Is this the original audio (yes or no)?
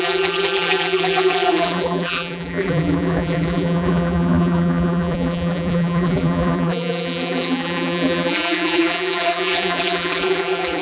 no